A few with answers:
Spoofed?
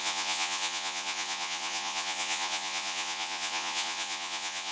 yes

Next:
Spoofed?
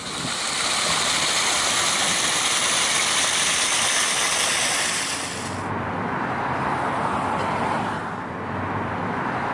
no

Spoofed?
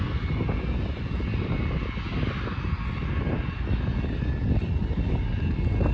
no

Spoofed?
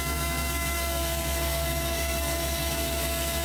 yes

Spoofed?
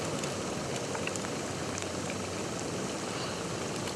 no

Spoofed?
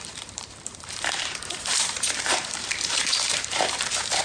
yes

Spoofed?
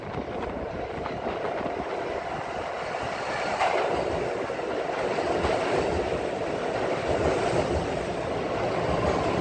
no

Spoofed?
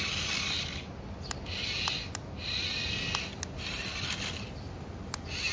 no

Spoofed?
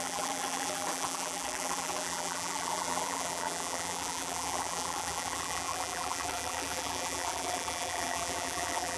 yes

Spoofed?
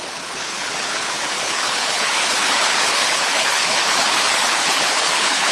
yes